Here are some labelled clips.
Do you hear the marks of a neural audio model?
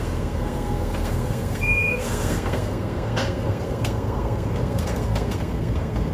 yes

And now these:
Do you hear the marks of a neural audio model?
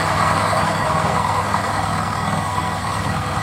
yes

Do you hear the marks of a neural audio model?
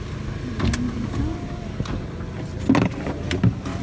no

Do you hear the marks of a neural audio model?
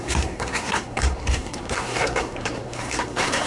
yes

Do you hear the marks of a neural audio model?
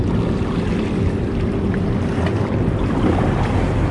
no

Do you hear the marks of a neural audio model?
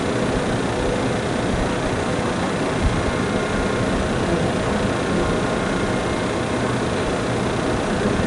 no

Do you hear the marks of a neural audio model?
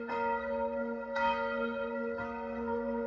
yes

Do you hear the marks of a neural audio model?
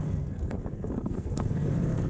yes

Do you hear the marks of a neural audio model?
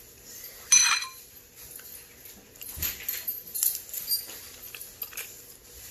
no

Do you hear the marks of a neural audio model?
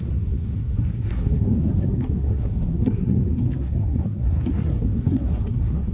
yes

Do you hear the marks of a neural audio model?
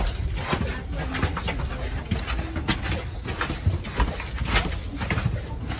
no